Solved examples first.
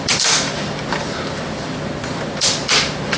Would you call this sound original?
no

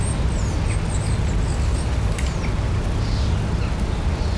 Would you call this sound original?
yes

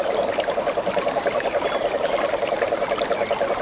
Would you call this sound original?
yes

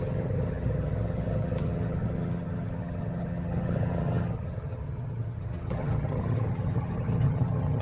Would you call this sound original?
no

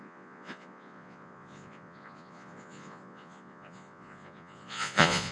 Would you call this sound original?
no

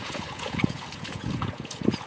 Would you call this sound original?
no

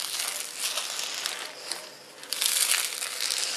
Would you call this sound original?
yes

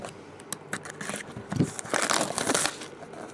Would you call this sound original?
yes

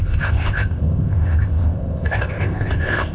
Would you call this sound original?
no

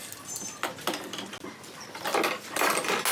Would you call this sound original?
yes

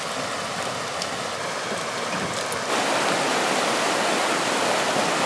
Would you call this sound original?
yes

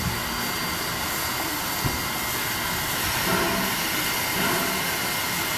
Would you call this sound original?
yes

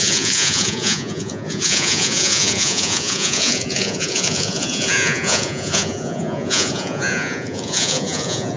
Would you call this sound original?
no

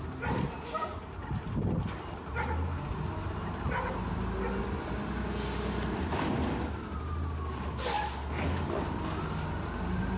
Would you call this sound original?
yes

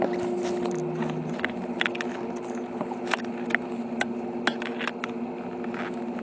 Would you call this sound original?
yes